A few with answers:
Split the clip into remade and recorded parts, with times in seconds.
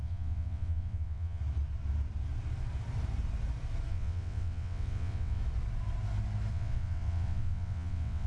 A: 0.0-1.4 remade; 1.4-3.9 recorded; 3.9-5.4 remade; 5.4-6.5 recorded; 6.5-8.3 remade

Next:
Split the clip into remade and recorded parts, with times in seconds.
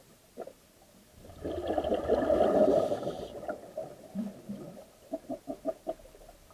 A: 0.0-6.5 recorded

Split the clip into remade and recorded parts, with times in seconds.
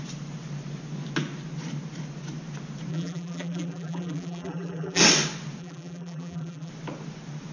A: 0.0-2.9 recorded; 2.9-5.0 remade; 5.0-5.6 recorded; 5.6-6.7 remade; 6.7-7.5 recorded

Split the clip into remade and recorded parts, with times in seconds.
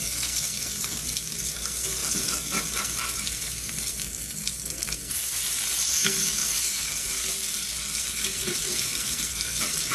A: 0.0-5.4 remade; 5.4-5.9 recorded; 5.9-9.9 remade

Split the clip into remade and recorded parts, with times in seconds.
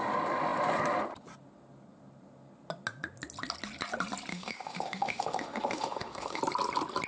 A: 0.0-4.3 recorded; 4.3-6.4 remade; 6.4-7.1 recorded